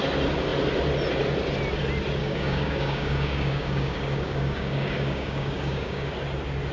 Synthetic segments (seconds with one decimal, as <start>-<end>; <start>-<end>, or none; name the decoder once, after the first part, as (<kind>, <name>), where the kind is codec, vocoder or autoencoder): 2.2-6.1 (codec, DAC)